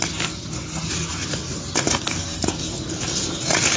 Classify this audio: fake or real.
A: real